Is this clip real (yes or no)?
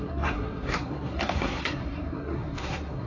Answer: no